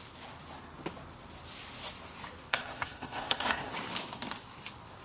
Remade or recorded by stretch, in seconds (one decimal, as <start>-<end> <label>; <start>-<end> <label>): 0.0-2.5 recorded; 2.5-3.7 remade; 3.7-5.0 recorded